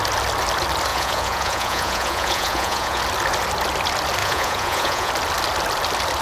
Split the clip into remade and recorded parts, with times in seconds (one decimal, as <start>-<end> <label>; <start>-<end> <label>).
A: 0.0-0.9 recorded; 0.9-3.0 remade; 3.0-4.2 recorded; 4.2-5.1 remade; 5.1-6.2 recorded